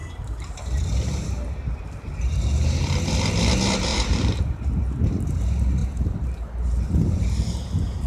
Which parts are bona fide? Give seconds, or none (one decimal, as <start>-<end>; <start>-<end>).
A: 0.0-3.9; 4.4-5.8